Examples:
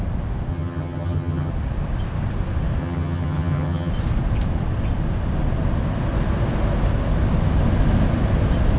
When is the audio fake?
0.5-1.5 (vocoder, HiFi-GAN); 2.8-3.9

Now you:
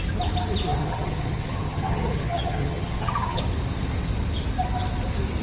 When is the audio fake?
0.8-3.4 (vocoder, HiFi-GAN)

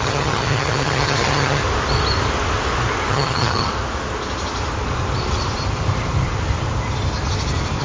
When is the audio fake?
0.0-1.6 (vocoder, HiFi-GAN); 3.1-3.7

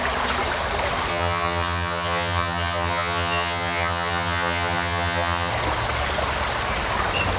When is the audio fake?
1.1-5.5 (vocoder, HiFi-GAN)

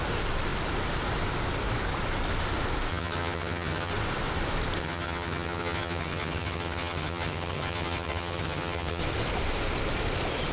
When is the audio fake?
2.9-3.9 (vocoder, HiFi-GAN); 4.8-9.0